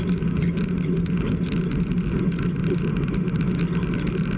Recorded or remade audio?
recorded